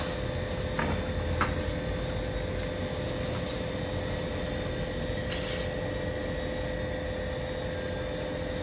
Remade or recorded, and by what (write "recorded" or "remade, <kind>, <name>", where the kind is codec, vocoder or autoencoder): recorded